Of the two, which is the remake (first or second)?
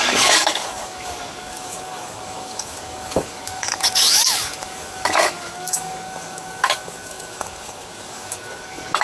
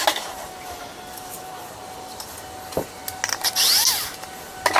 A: first